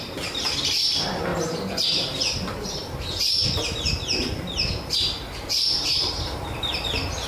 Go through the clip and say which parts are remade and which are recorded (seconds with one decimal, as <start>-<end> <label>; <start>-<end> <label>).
0.0-7.3 remade